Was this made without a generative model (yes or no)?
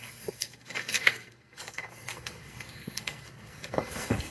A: no